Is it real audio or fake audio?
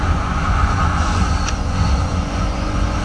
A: fake